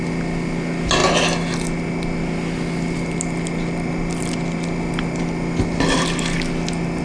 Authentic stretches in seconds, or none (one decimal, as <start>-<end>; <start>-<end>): 0.0-7.0